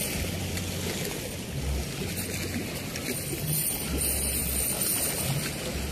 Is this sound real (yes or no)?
yes